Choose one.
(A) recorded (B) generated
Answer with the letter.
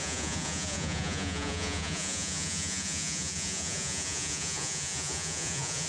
B